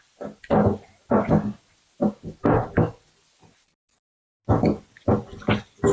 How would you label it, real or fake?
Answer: real